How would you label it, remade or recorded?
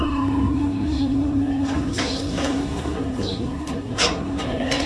remade